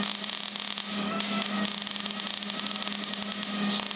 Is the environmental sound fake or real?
real